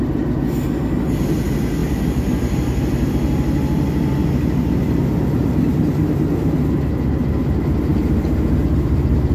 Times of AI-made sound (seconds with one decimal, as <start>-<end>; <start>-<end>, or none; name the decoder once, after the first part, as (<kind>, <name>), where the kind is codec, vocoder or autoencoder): 5.4-6.4 (vocoder, BigVGAN v2); 7.9-9.3